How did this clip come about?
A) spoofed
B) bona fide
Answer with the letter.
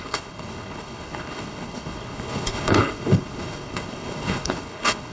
A